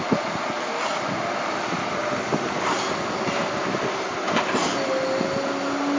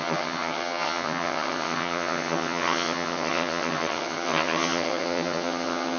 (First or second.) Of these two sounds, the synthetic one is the second